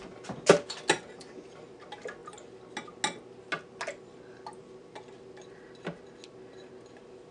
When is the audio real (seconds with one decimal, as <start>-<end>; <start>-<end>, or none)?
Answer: 0.0-7.3